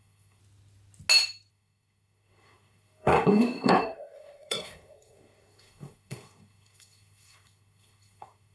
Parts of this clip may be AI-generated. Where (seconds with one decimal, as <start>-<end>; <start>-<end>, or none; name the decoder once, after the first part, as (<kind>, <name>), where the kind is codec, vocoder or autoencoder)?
0.0-0.4 (codec, SNAC); 1.5-8.5